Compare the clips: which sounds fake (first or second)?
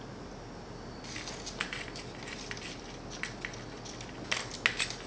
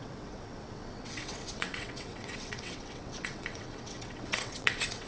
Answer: second